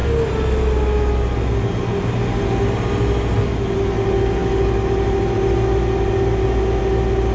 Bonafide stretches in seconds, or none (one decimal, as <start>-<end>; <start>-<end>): 0.0-7.3

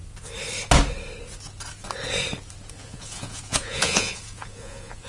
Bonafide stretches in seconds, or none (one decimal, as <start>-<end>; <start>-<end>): 0.0-2.7

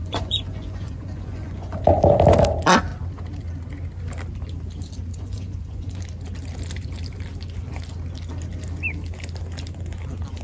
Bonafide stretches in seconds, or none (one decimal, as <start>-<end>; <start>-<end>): 1.8-5.1; 6.0-10.4

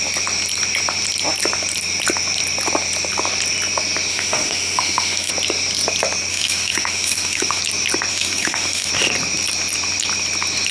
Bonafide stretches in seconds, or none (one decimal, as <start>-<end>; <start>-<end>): 0.0-4.1; 5.3-6.3; 7.6-8.1; 8.9-10.7

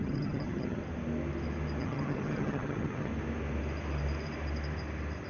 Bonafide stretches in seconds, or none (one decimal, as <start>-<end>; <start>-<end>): 0.8-1.8; 3.1-5.3